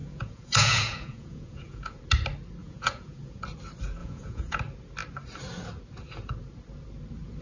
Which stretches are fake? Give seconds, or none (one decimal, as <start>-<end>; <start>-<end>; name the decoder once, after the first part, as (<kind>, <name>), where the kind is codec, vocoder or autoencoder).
0.0-2.0 (vocoder, Vocos); 2.6-3.4; 4.0-4.6